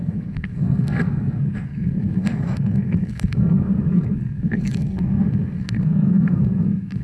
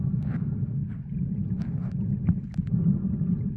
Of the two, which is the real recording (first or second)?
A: second